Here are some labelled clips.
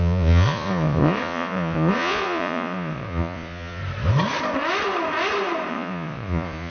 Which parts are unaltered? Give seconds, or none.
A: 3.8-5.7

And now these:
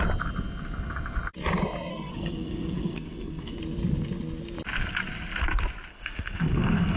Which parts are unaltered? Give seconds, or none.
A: 0.0-1.9; 3.6-5.9

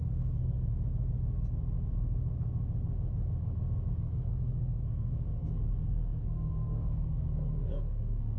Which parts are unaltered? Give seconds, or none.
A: 0.7-3.9

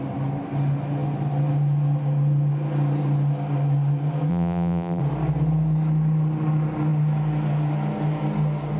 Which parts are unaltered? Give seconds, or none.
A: 0.0-4.3; 5.0-8.8

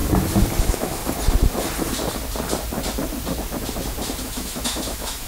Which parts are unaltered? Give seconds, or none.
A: 0.0-0.6; 1.0-4.2

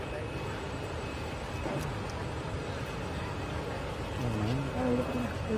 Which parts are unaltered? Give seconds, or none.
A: 0.0-5.6